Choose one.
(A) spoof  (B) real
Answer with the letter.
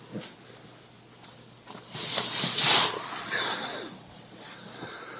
A